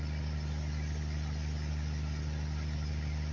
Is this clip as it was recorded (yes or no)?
yes